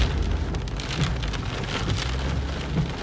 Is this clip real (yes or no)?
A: yes